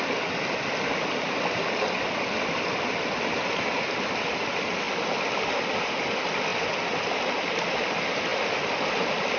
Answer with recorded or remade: recorded